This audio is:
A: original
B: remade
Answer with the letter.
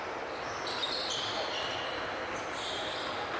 A